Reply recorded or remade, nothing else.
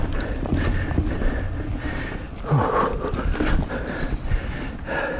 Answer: recorded